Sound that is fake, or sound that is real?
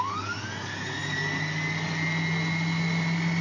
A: real